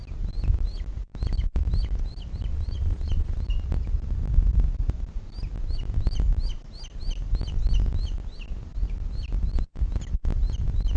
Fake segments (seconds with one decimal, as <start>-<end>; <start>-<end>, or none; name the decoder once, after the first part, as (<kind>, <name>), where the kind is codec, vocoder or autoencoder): 2.5-3.4 (vocoder, Vocos)